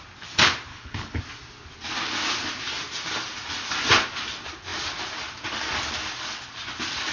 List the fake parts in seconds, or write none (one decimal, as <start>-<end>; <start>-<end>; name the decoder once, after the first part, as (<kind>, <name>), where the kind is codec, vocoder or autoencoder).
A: 0.7-1.2 (codec, HILCodec)

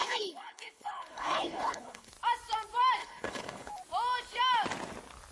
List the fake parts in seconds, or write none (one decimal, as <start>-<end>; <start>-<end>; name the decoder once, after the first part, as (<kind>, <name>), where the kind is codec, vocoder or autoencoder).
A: 0.0-2.1 (codec, HILCodec); 3.0-3.7

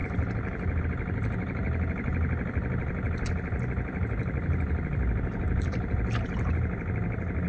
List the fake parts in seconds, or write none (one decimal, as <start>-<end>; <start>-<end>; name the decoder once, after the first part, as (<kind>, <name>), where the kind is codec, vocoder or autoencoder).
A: none

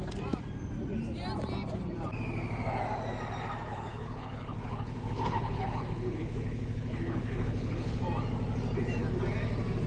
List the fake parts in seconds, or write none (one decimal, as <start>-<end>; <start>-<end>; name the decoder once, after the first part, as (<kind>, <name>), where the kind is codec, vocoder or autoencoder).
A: 3.7-8.0 (codec, HILCodec)

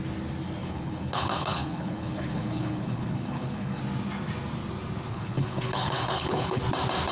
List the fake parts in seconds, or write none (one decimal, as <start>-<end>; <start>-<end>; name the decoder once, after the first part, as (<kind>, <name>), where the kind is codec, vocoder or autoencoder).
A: 0.6-3.8 (codec, HILCodec); 5.1-6.6

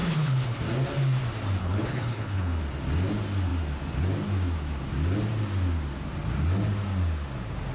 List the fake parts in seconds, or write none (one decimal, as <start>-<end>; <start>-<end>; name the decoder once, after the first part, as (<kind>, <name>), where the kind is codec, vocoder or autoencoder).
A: 0.0-0.6 (codec, HILCodec); 1.6-2.6